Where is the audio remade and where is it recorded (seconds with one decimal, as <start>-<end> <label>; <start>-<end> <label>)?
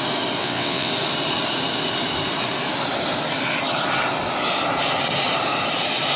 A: 0.0-0.4 recorded; 0.4-0.9 remade; 0.9-6.2 recorded